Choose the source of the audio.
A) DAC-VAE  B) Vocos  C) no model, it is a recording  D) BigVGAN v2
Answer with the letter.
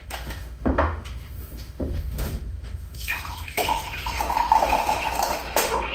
A